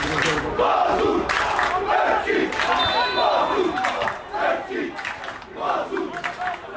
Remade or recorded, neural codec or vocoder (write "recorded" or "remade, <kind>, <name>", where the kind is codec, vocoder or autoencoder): recorded